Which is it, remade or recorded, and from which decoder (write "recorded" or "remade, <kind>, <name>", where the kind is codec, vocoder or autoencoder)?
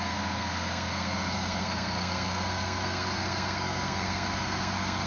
remade, codec, SNAC